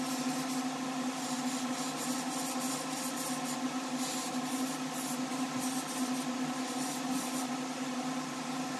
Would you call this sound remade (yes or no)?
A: no